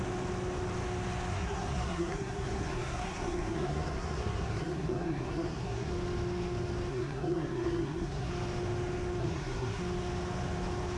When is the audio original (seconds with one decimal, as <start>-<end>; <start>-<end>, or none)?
0.0-1.3; 5.9-6.9; 8.3-9.2; 9.8-11.0